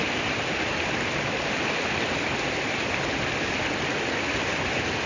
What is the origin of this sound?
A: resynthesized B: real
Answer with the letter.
B